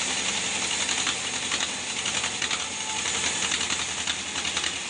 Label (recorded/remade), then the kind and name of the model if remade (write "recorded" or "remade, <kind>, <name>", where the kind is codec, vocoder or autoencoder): recorded